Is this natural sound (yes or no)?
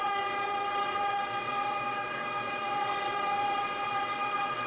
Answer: no